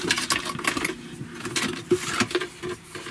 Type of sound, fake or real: real